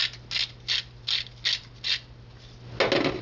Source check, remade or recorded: recorded